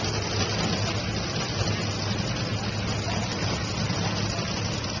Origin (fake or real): real